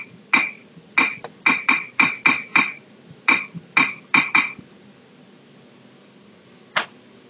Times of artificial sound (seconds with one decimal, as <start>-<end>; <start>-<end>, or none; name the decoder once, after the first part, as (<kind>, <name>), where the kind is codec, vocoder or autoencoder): none